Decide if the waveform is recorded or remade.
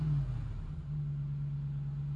recorded